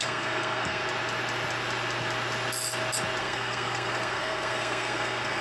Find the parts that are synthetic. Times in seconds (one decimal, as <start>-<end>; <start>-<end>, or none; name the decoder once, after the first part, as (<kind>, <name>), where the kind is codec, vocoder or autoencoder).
0.0-0.8 (codec, SNAC); 3.2-5.4